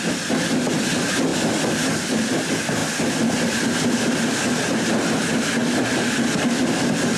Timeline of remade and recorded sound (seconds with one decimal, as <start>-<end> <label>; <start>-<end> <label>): 0.0-7.2 recorded